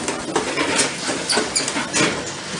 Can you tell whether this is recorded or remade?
recorded